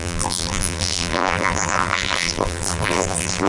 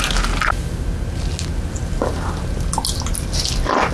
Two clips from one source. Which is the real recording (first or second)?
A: second